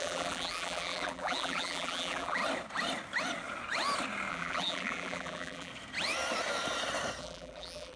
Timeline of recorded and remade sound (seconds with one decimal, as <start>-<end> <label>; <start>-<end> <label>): 0.0-2.4 remade; 2.4-4.3 recorded; 4.3-5.7 remade; 5.7-7.2 recorded; 7.2-8.0 remade